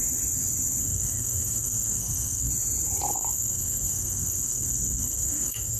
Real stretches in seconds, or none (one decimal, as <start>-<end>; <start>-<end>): 0.0-0.8; 2.5-3.1